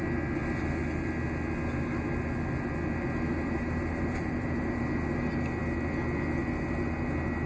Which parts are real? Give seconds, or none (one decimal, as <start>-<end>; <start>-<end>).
0.0-3.3; 4.8-7.5